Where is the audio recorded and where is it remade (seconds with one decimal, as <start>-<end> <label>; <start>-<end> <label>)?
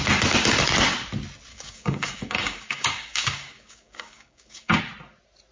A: 0.0-1.5 recorded; 1.5-4.8 remade; 4.8-5.5 recorded